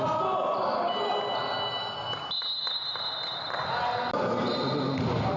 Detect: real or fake real